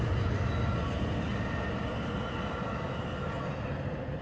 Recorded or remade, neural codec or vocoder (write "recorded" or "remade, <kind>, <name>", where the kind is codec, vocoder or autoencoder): recorded